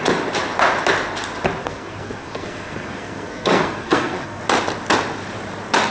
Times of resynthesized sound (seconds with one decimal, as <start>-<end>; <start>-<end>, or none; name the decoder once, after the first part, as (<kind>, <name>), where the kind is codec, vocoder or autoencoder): 1.6-4.4 (codec, SNAC)